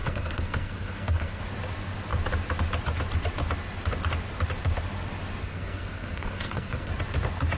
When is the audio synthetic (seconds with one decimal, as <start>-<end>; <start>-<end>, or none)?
0.0-1.4; 5.4-6.9

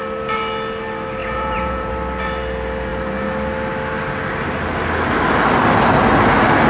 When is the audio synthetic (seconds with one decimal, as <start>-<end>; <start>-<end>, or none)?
1.2-1.9

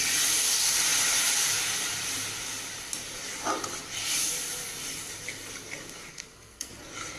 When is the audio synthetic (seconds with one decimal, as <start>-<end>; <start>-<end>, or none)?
6.1-6.7

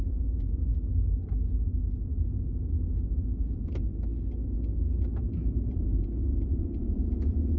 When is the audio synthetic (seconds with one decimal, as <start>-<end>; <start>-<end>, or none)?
0.0-0.7; 5.3-7.6

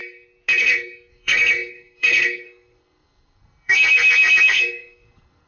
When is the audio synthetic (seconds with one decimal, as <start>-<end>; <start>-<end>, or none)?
0.6-5.5

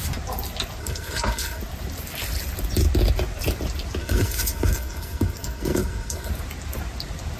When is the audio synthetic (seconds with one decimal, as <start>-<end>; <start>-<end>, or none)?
0.8-1.6; 4.0-6.3

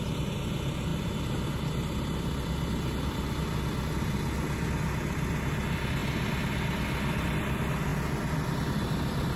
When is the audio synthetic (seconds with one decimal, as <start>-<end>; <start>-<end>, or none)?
none

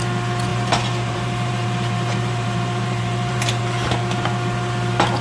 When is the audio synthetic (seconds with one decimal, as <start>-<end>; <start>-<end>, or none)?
0.5-3.6